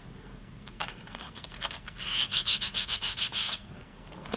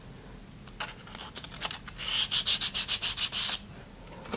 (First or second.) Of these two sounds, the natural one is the second